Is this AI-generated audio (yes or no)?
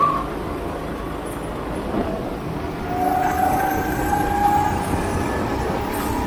no